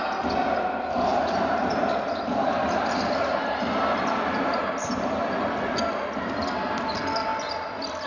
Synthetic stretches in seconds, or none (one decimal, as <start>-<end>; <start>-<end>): 1.1-5.6